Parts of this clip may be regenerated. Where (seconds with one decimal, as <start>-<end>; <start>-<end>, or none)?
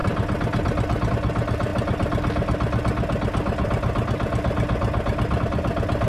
none